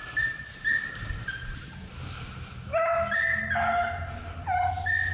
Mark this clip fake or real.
real